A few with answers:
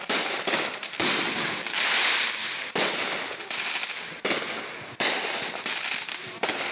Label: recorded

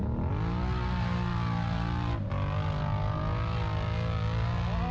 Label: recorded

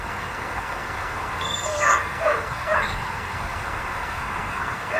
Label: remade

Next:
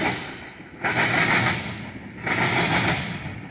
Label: recorded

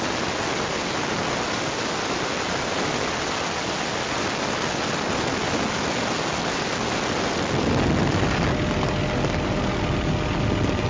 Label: recorded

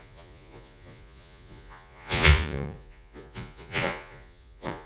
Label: remade